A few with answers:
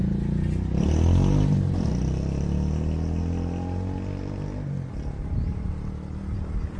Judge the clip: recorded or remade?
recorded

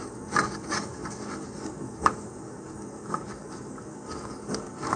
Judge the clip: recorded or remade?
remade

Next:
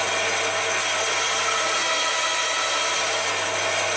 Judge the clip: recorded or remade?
recorded